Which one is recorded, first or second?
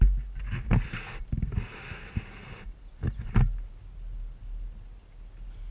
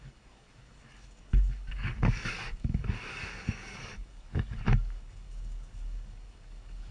first